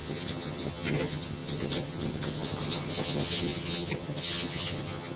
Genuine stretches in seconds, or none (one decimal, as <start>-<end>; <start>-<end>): none